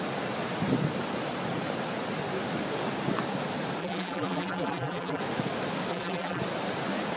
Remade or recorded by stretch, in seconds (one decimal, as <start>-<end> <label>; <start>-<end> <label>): 0.0-3.8 recorded; 3.8-5.2 remade; 5.2-5.9 recorded; 5.9-6.4 remade; 6.4-7.2 recorded